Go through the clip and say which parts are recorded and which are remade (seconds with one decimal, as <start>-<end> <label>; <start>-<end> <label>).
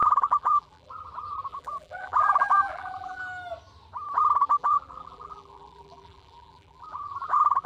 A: 0.0-0.9 remade; 0.9-1.5 recorded; 1.5-3.2 remade; 3.2-4.6 recorded; 4.6-7.7 remade